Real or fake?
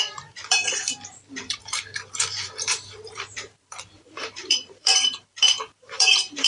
fake